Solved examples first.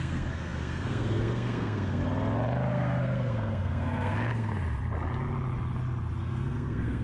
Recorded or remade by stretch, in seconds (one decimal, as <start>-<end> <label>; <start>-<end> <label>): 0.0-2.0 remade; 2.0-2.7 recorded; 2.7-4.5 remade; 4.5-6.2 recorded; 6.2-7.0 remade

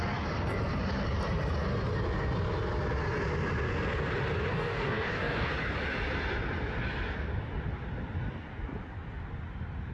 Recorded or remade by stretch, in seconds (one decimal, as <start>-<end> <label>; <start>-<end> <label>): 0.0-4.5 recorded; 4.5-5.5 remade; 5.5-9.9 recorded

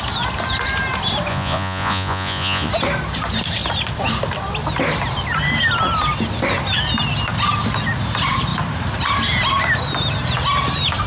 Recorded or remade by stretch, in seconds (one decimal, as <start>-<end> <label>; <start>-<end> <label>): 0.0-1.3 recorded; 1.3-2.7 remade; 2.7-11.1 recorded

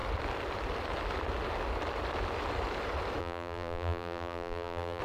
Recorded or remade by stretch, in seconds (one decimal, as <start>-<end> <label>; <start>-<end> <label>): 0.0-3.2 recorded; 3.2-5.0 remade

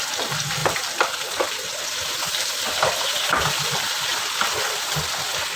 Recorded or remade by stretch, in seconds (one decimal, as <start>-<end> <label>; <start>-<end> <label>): 0.0-0.6 recorded; 0.6-2.1 remade; 2.1-4.1 recorded; 4.1-4.7 remade; 4.7-5.6 recorded